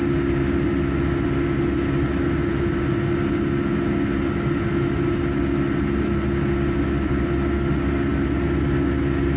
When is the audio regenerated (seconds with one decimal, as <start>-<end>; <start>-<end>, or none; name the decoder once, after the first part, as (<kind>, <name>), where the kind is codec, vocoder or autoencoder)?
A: none